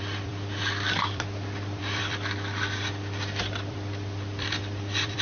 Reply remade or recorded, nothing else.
remade